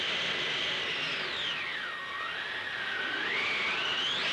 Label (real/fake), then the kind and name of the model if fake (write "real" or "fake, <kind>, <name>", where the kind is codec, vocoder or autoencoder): real